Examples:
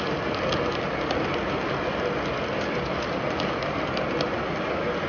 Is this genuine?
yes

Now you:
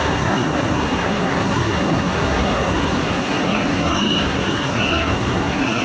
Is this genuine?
no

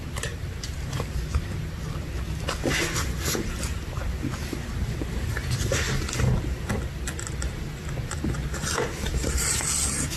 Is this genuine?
yes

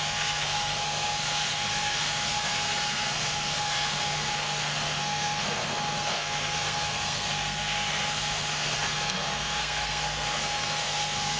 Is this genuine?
no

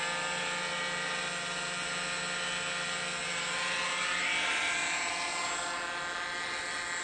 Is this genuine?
yes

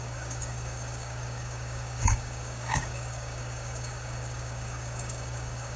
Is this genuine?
no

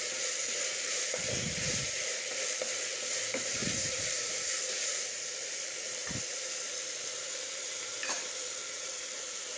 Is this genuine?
no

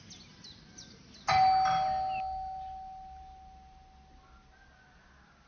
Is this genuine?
yes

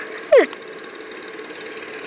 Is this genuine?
yes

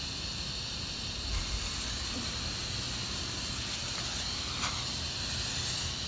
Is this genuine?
yes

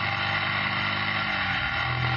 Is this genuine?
yes